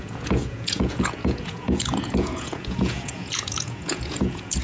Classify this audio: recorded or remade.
remade